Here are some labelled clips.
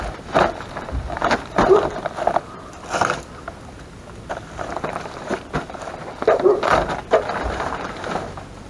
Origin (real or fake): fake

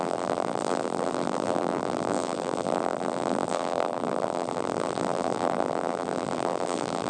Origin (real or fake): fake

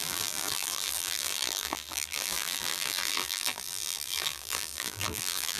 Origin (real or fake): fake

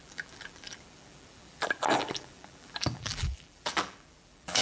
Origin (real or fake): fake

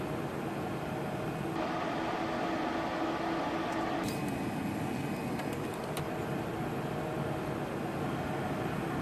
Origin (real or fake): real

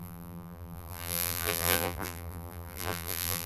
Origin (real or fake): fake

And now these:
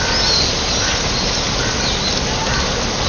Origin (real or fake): real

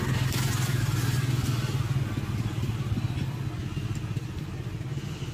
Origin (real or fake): real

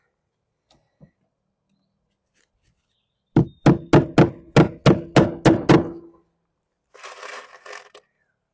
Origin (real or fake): real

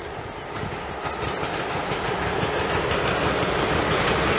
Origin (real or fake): real